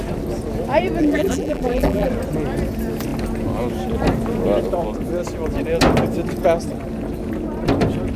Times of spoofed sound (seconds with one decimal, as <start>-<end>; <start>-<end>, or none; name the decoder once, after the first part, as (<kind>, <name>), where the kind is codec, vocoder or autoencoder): 1.0-2.1 (vocoder, BigVGAN v2)